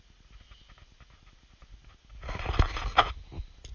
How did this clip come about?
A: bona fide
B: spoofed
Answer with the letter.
A